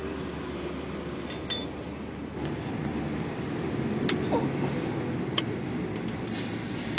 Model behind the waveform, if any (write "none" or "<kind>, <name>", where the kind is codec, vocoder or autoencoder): none